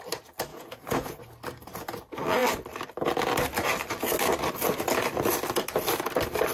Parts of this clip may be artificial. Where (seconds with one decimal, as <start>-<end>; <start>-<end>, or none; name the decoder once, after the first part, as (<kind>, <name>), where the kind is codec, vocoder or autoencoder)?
0.5-1.2 (vocoder, Vocos)